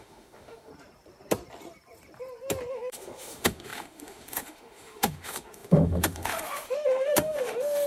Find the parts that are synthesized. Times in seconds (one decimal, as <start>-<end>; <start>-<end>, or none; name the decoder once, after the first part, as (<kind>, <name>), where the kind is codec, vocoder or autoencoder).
0.0-0.7 (autoencoder, DAC-VAE); 2.7-7.9